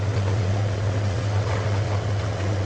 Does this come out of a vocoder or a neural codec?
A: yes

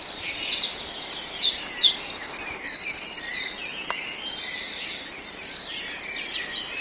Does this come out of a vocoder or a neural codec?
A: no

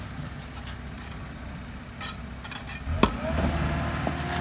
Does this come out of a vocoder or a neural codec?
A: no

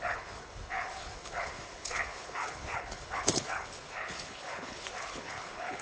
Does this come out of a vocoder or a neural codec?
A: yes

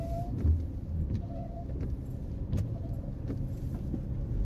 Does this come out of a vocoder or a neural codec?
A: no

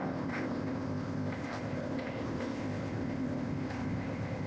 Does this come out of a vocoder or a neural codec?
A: yes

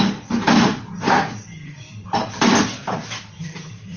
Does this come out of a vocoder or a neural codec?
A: yes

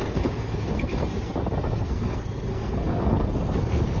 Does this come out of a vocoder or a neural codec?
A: yes